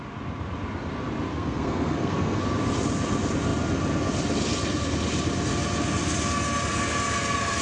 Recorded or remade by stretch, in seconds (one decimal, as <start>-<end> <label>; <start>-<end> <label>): 0.0-1.3 recorded; 1.3-2.4 remade; 2.4-7.6 recorded